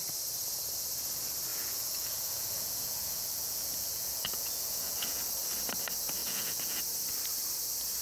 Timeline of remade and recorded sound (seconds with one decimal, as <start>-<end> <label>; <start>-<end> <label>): 0.0-1.5 recorded; 1.5-5.2 remade; 5.2-6.2 recorded; 6.2-6.8 remade; 6.8-8.0 recorded